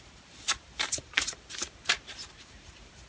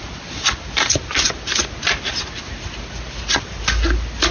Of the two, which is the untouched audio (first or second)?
second